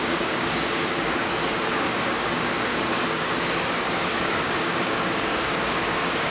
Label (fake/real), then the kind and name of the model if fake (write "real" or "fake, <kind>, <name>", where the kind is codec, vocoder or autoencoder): fake, codec, DAC